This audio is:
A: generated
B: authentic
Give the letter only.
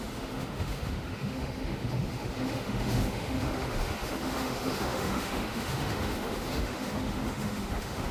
A